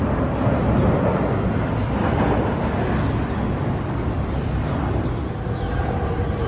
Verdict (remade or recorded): recorded